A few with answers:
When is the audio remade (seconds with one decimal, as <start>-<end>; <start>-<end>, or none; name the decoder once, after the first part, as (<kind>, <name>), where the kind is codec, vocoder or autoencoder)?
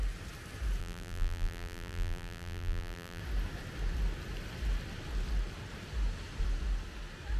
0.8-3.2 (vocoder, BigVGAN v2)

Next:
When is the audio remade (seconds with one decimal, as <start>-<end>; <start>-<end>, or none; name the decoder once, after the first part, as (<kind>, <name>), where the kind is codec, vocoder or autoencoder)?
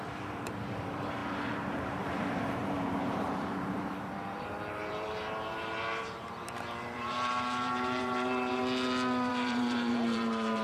0.0-8.6 (vocoder, BigVGAN v2); 9.3-10.6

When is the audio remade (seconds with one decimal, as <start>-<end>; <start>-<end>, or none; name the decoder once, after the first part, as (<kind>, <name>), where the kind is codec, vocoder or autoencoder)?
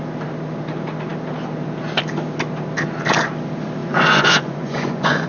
3.8-5.3 (vocoder, Vocos)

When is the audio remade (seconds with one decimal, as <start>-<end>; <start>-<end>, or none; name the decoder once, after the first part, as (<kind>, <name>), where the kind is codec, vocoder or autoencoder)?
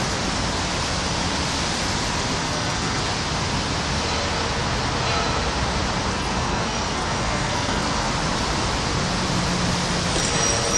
2.4-3.0 (codec, SNAC); 6.1-8.1